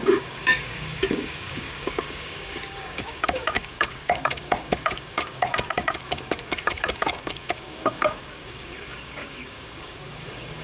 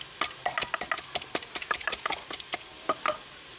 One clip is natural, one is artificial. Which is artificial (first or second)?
first